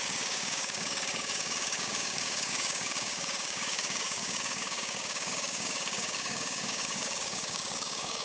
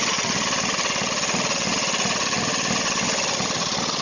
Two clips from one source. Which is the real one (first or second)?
second